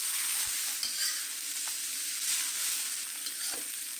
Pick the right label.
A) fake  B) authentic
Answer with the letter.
B